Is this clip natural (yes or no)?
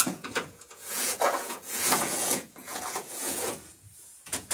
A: no